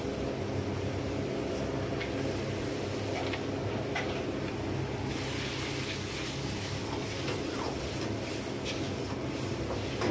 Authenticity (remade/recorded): recorded